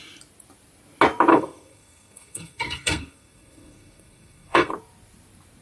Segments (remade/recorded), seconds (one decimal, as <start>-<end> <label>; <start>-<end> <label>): 0.0-1.3 recorded; 1.3-4.7 remade; 4.7-5.6 recorded